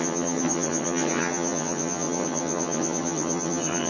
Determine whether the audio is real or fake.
fake